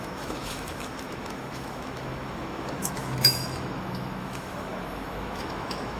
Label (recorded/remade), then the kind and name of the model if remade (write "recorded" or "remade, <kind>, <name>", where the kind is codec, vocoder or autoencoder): remade, autoencoder, DAC-VAE